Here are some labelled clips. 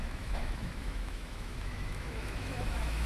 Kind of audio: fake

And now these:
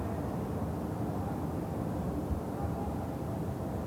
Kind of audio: real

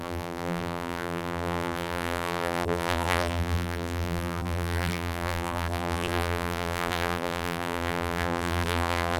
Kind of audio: fake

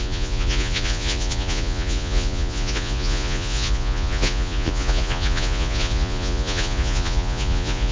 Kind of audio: fake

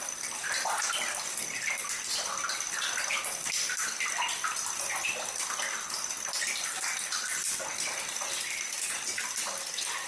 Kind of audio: real